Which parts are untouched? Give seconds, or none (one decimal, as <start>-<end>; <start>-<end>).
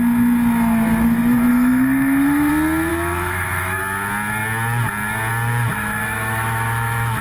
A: 0.0-1.5; 2.5-2.9; 3.8-5.7